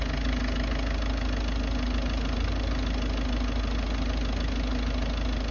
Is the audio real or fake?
real